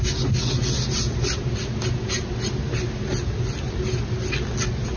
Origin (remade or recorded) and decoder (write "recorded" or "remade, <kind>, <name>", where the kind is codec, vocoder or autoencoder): recorded